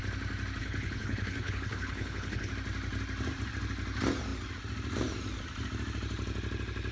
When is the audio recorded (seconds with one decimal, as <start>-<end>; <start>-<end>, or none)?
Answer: 0.0-0.6; 2.5-6.9